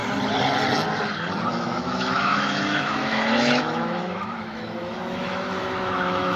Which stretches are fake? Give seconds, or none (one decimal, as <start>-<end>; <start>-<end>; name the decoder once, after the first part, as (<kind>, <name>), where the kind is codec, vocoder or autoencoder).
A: 1.5-6.4 (autoencoder, DAC-VAE)